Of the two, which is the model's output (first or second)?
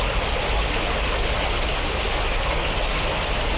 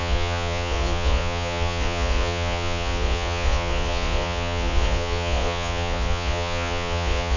second